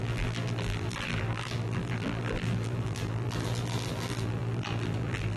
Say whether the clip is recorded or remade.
remade